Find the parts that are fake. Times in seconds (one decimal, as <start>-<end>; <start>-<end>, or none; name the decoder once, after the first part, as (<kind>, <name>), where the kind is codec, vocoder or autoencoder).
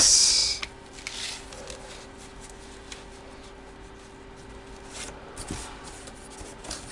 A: none